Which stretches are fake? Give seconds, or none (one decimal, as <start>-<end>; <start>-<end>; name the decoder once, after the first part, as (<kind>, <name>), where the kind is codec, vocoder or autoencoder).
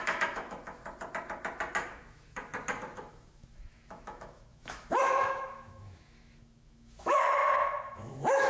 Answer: 0.0-0.8 (autoencoder, DAC-VAE); 1.9-2.5; 3.1-8.5